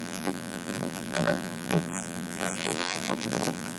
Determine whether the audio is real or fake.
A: fake